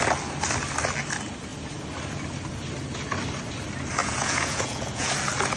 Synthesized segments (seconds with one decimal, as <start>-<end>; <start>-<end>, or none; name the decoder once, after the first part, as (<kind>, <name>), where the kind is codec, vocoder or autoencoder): 4.0-5.1 (vocoder, Vocos)